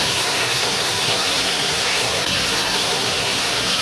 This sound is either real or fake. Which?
fake